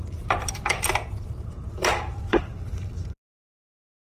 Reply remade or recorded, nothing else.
remade